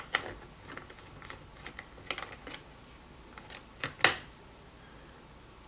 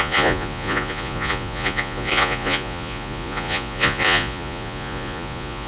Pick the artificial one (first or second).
second